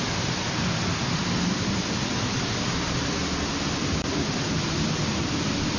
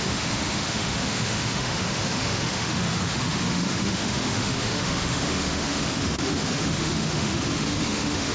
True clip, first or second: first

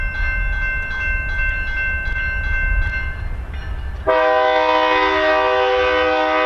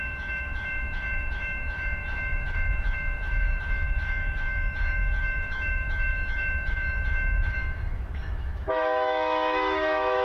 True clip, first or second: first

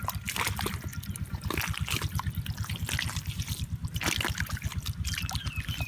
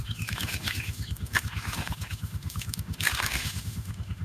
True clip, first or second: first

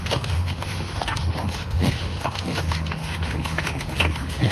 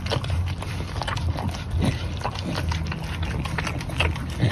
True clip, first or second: second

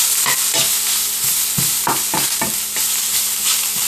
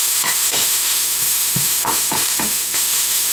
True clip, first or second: first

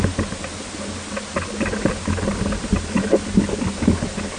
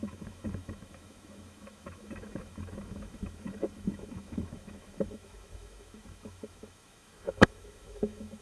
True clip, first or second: first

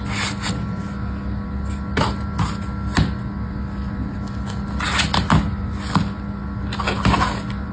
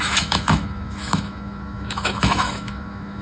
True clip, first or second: first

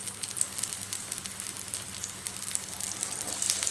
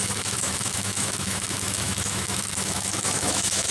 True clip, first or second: first